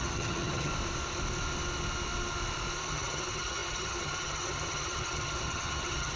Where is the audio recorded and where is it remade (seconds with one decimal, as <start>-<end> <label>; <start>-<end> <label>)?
0.0-0.7 remade; 0.7-2.9 recorded; 2.9-6.2 remade

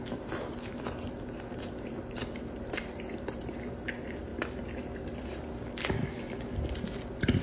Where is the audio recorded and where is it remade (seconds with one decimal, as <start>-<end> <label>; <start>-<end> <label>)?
0.0-4.3 remade; 4.3-7.4 recorded

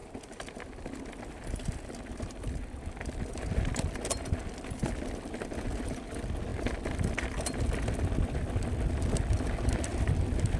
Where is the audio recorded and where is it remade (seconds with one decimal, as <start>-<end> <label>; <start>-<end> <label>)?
0.0-3.2 remade; 3.2-9.9 recorded; 9.9-10.6 remade

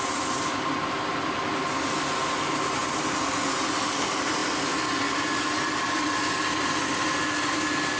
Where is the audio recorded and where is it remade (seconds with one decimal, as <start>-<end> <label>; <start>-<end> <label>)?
0.0-8.0 recorded